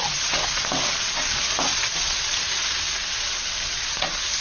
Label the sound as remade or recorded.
remade